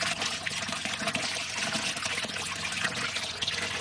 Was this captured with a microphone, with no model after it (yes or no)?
no